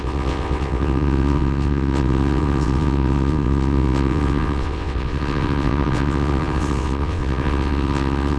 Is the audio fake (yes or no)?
yes